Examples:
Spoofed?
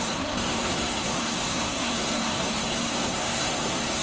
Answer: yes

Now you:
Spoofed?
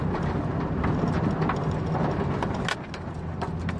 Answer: no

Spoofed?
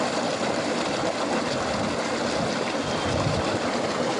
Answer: no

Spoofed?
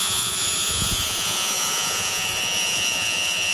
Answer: yes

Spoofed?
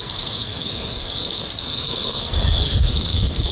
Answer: yes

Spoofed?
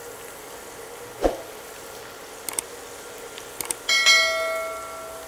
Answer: no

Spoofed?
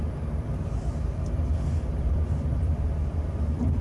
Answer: yes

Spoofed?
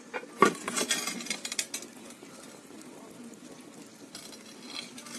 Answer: no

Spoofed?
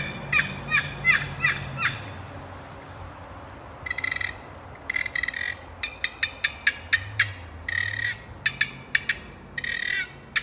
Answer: no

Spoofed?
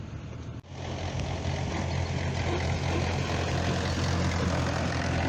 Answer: no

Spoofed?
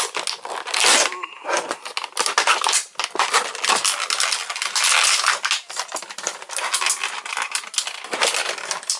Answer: no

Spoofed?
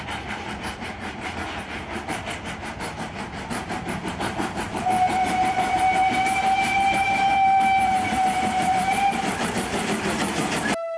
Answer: yes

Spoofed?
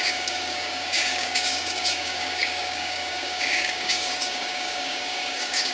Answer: yes